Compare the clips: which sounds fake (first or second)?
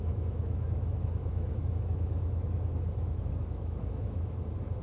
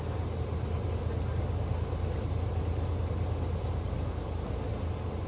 first